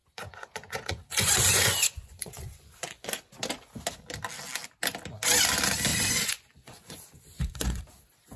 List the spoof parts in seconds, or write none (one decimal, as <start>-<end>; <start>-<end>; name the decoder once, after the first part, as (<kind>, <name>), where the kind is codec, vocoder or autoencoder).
0.0-3.1 (vocoder, Vocos); 5.9-7.8